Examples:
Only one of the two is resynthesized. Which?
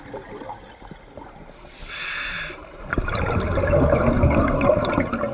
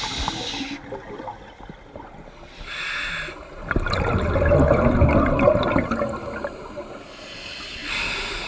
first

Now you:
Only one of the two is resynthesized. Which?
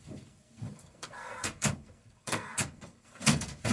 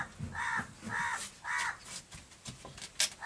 first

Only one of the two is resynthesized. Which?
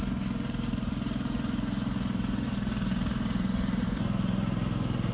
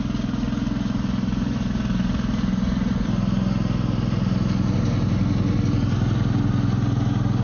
first